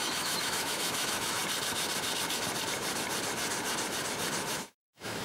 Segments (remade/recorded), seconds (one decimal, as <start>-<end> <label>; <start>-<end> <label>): 0.0-1.4 remade; 1.4-4.5 recorded; 4.5-5.2 remade